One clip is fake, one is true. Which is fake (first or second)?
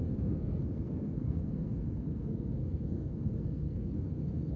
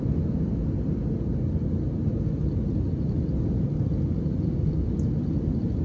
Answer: first